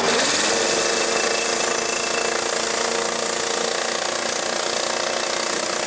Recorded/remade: recorded